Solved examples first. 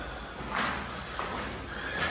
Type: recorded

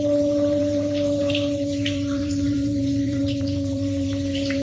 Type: remade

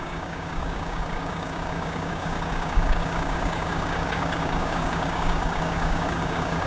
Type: remade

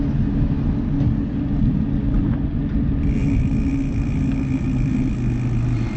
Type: recorded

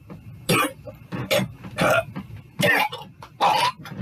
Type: recorded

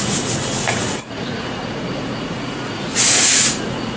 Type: remade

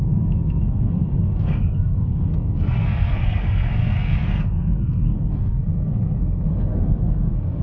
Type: remade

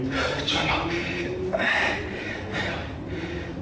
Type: remade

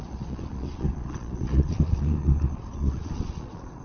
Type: remade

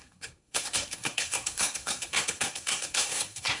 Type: remade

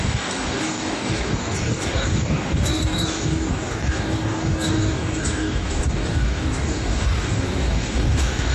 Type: remade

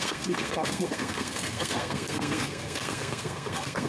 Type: remade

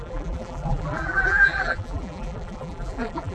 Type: remade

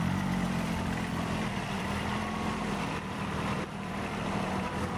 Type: remade